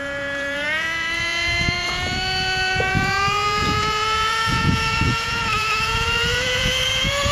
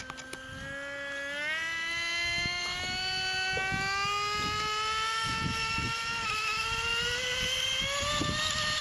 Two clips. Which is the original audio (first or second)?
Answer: second